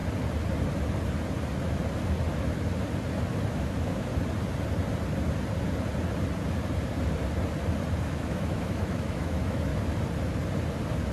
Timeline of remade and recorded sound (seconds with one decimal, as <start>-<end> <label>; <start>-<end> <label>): 0.0-3.5 recorded; 3.5-4.1 remade; 4.1-8.0 recorded; 8.0-9.7 remade; 9.7-11.1 recorded